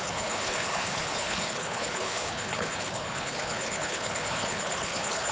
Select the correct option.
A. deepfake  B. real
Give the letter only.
A